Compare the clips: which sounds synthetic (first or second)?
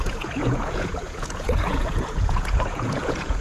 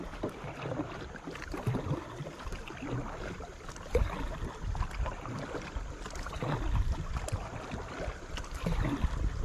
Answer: first